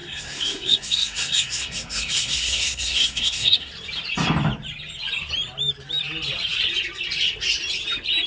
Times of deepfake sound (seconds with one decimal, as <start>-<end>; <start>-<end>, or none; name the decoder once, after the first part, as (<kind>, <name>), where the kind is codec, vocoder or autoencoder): 0.0-3.7 (codec, SNAC)